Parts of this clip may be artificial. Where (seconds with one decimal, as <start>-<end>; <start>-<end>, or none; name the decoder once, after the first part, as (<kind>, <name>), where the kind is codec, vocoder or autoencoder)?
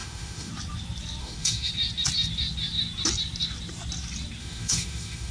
0.0-0.5 (autoencoder, DAC-VAE); 1.2-1.7; 4.4-5.3